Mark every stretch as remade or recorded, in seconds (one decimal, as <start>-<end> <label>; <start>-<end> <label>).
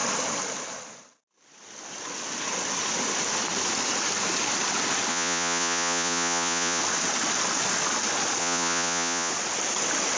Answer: 0.0-5.1 recorded; 5.1-6.8 remade; 6.8-8.4 recorded; 8.4-9.3 remade; 9.3-10.2 recorded